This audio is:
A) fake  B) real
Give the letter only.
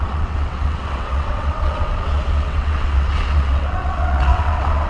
A